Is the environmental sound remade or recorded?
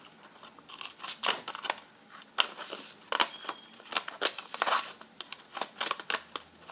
recorded